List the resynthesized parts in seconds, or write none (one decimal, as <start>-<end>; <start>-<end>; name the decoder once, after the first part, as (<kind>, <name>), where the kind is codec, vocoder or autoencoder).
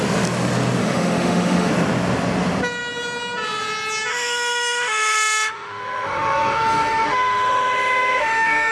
0.8-1.7 (autoencoder, DAC-VAE); 4.1-8.7